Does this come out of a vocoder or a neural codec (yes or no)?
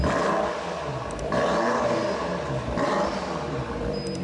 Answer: no